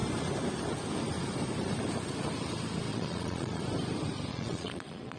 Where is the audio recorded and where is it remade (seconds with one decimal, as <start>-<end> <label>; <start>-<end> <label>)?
0.0-2.9 recorded; 2.9-3.6 remade; 3.6-4.3 recorded; 4.3-5.2 remade